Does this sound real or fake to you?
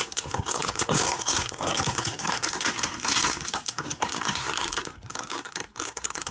fake